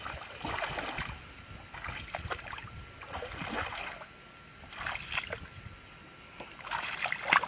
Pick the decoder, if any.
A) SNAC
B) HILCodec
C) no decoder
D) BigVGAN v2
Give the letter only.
C